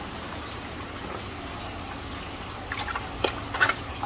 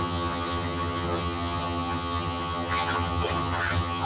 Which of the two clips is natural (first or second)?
first